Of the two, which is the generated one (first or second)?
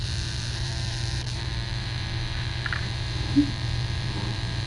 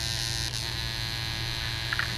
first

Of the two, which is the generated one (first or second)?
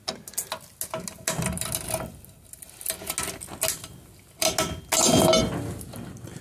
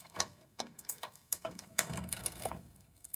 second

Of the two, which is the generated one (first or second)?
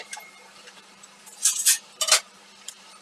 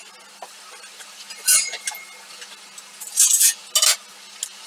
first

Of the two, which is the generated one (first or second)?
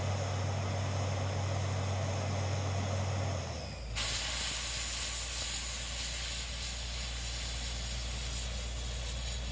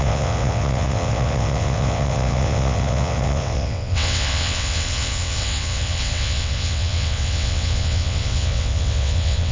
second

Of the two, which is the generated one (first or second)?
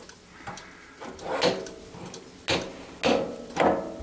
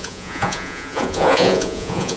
second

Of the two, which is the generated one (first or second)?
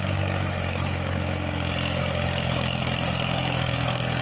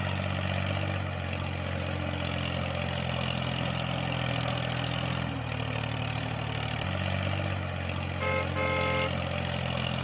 first